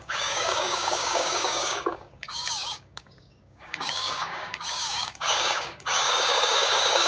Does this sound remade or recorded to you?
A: remade